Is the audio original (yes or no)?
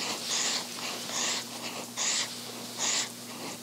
yes